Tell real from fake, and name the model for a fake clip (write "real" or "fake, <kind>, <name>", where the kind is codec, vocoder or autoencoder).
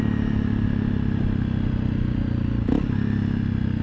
real